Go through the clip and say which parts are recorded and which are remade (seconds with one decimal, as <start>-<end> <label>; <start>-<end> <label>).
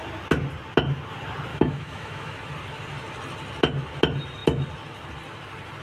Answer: 0.0-1.5 recorded; 1.5-2.3 remade; 2.3-5.8 recorded